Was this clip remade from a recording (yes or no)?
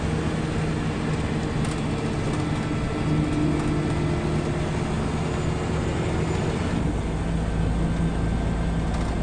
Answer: no